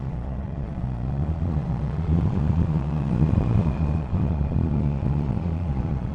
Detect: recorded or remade remade